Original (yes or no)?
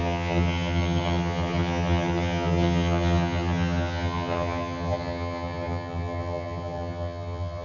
no